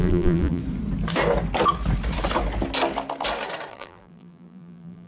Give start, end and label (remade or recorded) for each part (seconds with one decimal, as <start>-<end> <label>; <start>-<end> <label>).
0.0-0.6 remade; 0.6-3.7 recorded; 3.7-5.1 remade